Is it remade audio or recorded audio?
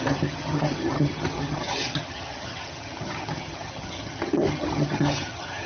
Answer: remade